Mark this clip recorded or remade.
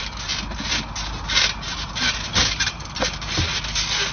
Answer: recorded